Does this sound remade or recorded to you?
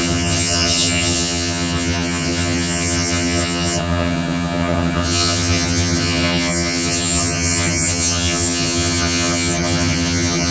remade